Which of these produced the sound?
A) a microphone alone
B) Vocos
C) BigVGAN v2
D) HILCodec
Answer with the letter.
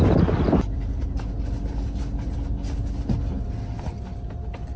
A